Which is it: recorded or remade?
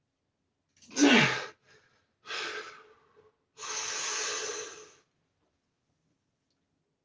recorded